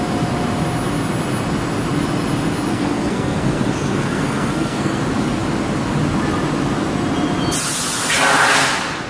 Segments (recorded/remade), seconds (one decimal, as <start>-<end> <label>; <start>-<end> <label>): 0.0-2.7 recorded; 2.7-5.0 remade; 5.0-9.1 recorded